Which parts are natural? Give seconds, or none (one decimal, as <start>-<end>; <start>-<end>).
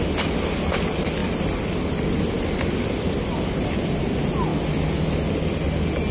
0.0-1.2; 4.1-6.1